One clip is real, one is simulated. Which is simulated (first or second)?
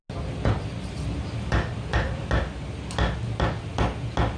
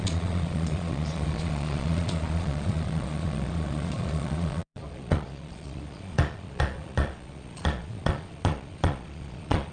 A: second